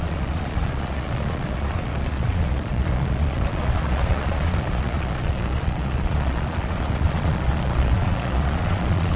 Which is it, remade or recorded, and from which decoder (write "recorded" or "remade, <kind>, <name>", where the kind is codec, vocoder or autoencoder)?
remade, vocoder, Vocos